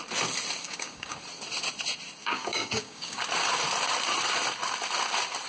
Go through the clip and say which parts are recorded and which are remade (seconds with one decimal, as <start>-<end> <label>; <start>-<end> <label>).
0.0-0.6 recorded; 0.6-1.2 remade; 1.2-2.2 recorded; 2.2-3.2 remade; 3.2-5.5 recorded